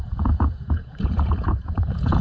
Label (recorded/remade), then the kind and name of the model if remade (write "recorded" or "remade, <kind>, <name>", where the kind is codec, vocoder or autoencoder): remade, vocoder, Vocos